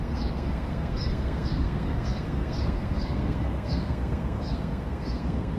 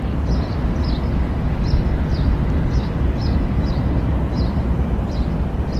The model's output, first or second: first